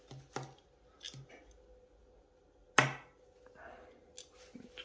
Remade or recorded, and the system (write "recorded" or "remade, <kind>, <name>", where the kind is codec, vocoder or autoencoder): recorded